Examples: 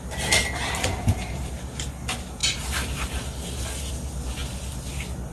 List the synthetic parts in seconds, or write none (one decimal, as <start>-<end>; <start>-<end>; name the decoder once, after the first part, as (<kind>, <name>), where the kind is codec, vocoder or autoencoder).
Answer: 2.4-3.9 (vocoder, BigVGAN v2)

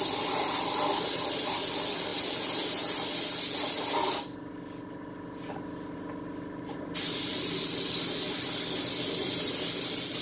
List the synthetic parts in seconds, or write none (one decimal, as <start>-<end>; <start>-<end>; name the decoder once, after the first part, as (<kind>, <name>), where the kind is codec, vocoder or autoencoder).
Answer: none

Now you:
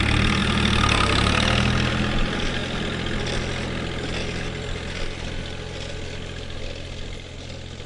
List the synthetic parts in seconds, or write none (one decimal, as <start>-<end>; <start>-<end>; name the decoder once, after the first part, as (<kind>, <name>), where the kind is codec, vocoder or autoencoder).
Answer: none